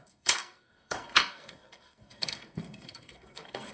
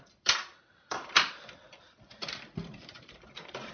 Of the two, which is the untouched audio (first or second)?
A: second